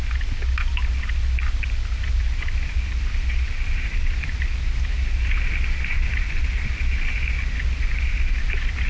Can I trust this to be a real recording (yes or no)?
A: yes